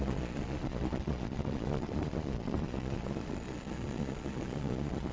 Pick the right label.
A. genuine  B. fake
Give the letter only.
B